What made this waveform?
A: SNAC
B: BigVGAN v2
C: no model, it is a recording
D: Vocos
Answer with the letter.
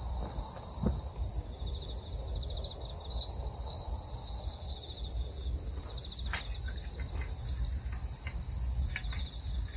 C